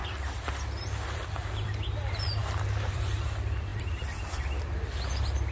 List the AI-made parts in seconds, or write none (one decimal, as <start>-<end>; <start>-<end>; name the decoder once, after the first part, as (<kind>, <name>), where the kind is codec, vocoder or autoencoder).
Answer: 0.0-2.4 (vocoder, BigVGAN v2); 2.9-5.5